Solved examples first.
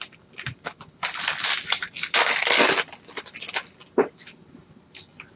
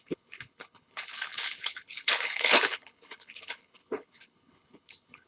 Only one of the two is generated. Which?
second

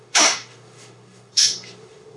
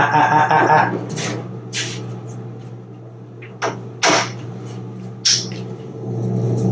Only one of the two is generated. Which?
first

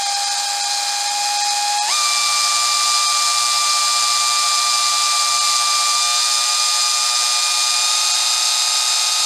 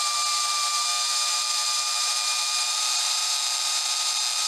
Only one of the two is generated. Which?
second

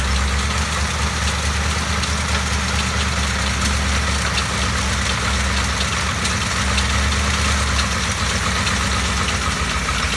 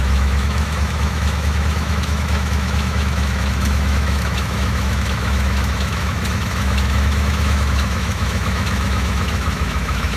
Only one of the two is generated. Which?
second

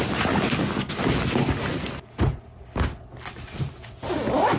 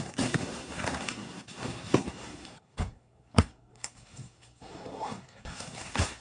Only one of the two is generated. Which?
second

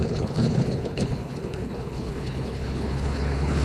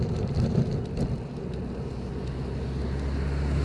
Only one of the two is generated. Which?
first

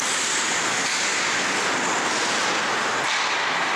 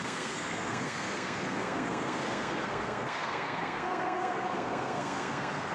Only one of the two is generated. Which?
second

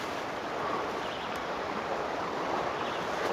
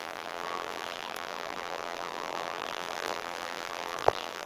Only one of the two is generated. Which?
second